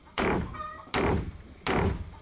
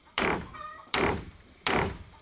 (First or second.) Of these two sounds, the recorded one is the first